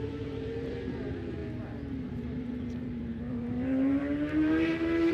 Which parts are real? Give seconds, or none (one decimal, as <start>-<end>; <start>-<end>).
1.4-2.1